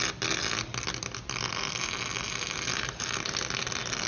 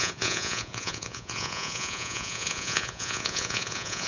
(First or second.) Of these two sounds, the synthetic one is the second